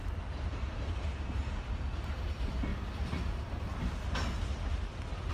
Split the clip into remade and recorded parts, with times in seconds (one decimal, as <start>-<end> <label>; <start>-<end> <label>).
0.0-2.7 remade; 2.7-5.3 recorded